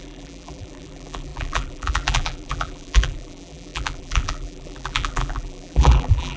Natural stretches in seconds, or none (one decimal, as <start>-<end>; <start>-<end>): none

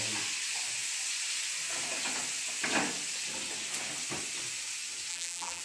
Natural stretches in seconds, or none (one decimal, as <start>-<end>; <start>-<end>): 0.0-5.1

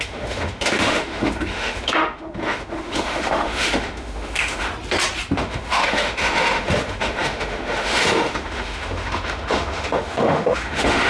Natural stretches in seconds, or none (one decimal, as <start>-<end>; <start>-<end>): 4.7-5.3

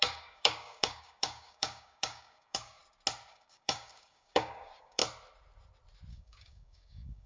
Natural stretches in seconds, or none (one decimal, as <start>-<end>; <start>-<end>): 2.8-3.3; 5.0-6.1